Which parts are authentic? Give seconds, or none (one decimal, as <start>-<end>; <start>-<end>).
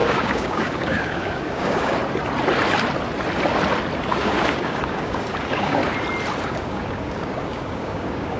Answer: 2.0-4.1; 5.8-6.4